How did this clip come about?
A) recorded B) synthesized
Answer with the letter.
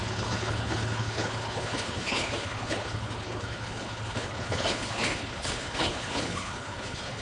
B